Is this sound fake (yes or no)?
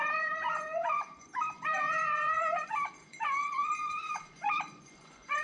yes